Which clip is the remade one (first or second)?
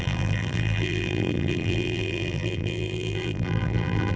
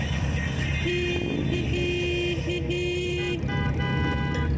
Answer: first